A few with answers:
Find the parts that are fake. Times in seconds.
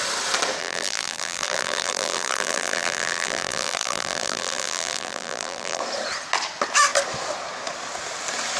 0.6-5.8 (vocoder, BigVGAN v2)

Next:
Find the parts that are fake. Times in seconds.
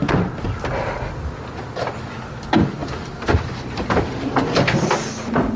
2.8-4.8 (vocoder, BigVGAN v2)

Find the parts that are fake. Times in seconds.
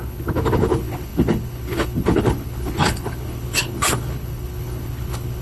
0.0-5.4 (codec, HILCodec)